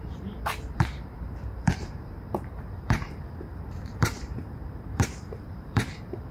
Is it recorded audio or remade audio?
remade